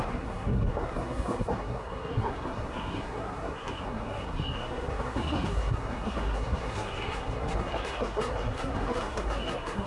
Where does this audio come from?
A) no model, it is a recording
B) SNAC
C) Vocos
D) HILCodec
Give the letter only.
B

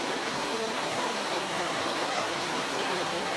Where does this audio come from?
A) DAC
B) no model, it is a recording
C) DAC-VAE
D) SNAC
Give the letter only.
D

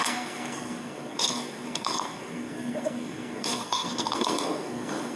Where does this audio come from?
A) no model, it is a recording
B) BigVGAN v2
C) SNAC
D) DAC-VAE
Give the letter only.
C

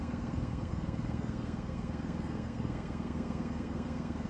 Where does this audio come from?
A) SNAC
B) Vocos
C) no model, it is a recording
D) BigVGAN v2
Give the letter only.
A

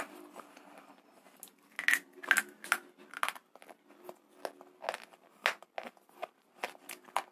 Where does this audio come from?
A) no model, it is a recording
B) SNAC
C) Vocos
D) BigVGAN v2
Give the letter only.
A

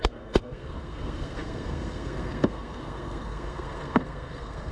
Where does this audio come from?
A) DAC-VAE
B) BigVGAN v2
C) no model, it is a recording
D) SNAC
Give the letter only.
D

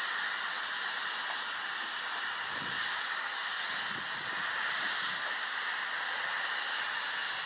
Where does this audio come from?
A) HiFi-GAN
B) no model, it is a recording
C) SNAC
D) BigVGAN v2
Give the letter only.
B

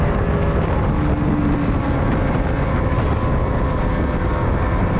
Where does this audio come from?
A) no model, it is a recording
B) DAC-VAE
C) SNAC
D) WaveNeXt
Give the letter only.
A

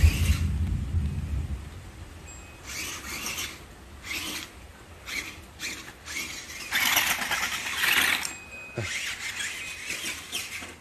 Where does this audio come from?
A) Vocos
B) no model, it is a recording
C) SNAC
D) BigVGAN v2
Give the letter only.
B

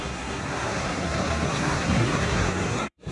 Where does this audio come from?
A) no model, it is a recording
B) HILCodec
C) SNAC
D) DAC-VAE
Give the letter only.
C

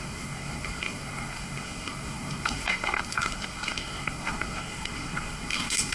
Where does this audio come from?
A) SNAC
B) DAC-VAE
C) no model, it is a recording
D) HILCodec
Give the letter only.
A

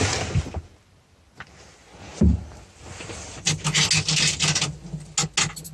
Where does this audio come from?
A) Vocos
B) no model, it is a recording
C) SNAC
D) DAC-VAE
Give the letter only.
B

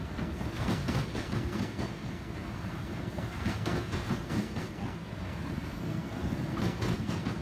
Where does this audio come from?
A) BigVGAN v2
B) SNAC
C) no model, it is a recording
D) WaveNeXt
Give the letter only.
B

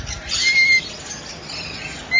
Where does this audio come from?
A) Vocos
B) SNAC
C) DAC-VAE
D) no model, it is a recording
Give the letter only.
D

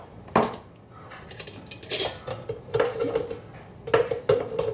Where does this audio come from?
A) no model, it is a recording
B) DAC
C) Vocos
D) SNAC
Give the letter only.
A